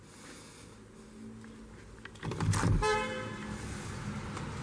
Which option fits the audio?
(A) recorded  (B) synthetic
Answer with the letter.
A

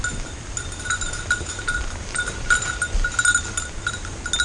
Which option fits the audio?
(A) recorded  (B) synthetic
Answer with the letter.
A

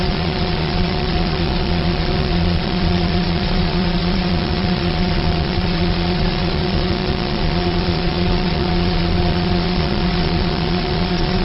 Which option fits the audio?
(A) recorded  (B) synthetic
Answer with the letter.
B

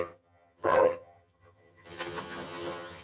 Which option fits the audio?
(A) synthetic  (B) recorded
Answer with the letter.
A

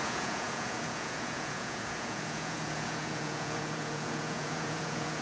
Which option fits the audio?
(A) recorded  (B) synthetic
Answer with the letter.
B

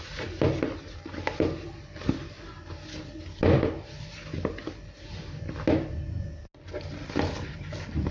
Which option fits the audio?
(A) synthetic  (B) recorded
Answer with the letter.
B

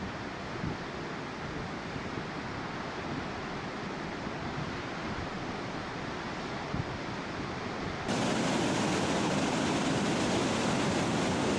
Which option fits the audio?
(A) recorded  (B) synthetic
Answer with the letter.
A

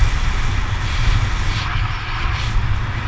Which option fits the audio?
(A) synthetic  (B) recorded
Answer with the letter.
B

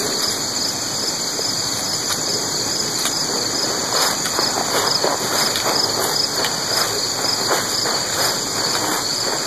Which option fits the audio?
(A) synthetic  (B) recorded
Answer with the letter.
B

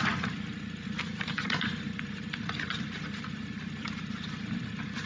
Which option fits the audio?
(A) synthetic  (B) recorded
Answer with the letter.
A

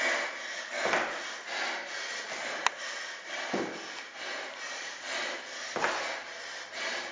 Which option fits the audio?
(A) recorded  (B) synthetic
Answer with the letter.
A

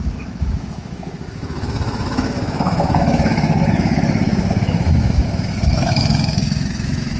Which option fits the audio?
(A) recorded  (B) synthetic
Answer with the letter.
B